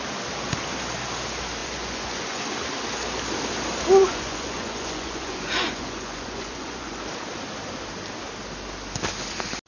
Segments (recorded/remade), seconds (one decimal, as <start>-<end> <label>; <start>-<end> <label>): 0.0-1.6 recorded; 1.6-2.5 remade; 2.5-4.0 recorded; 4.0-7.0 remade; 7.0-9.7 recorded